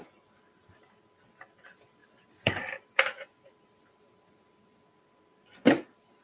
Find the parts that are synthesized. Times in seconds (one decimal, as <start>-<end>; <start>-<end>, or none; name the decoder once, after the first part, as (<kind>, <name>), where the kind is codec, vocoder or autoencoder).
2.0-5.1 (vocoder, BigVGAN v2)